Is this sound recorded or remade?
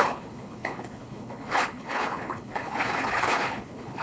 remade